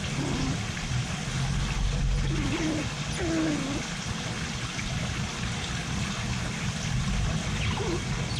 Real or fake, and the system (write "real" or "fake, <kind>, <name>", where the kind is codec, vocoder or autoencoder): real